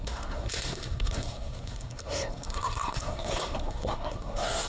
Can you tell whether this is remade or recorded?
remade